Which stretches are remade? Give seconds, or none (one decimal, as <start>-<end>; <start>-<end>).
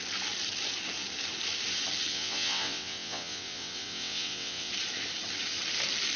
2.1-4.7